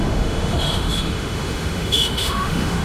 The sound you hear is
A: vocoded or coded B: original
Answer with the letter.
A